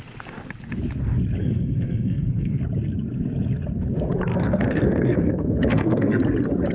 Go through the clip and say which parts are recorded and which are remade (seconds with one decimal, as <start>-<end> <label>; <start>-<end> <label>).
0.0-1.4 recorded; 1.4-2.6 remade; 2.6-4.3 recorded; 4.3-6.2 remade; 6.2-6.7 recorded